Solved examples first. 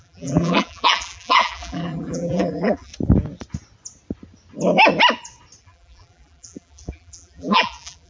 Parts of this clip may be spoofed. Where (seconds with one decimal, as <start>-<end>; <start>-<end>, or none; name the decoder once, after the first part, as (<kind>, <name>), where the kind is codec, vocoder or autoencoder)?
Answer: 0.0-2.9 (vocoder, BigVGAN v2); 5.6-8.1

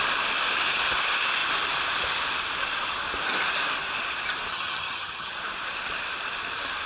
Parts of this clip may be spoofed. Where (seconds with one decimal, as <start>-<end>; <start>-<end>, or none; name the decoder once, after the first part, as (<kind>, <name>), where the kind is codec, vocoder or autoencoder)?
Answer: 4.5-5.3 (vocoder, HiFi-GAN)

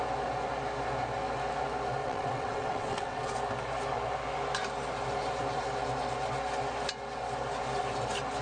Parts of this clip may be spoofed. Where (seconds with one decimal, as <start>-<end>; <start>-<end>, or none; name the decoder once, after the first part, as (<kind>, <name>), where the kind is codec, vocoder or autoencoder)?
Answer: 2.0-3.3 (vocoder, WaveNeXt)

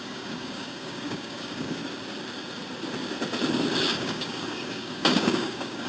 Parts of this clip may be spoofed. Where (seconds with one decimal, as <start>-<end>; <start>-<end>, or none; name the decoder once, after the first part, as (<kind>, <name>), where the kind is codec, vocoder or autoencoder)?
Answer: 0.0-1.8 (codec, DAC); 3.9-5.9

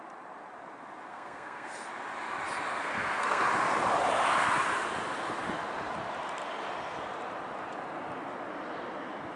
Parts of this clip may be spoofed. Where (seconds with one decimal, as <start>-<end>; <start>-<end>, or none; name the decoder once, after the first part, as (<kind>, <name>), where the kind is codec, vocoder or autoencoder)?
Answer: 1.1-1.7 (codec, SNAC); 2.7-3.4

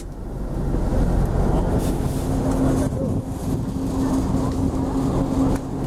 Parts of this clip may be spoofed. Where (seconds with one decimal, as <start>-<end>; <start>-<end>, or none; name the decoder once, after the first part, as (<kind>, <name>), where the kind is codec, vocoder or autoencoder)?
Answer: none

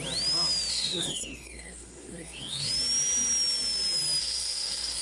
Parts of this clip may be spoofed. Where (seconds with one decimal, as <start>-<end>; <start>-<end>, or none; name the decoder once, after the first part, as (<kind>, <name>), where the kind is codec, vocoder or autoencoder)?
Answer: 0.7-2.7 (codec, SNAC); 4.2-5.0

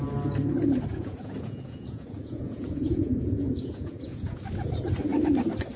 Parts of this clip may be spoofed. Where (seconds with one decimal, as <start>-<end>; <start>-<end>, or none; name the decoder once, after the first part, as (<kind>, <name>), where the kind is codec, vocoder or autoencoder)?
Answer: 0.9-4.4 (vocoder, Vocos)